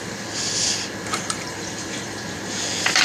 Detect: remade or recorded remade